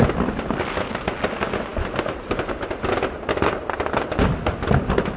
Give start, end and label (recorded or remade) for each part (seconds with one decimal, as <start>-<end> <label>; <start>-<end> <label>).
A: 0.0-5.2 recorded